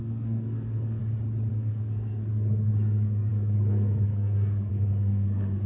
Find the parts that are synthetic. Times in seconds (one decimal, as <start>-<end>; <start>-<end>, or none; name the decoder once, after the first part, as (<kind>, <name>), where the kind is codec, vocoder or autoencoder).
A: 0.0-1.0 (codec, SNAC); 1.5-5.7